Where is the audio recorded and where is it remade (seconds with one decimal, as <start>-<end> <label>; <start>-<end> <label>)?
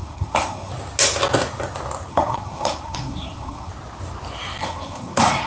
0.0-0.7 remade; 0.7-2.1 recorded; 2.1-3.7 remade; 3.7-4.6 recorded; 4.6-5.5 remade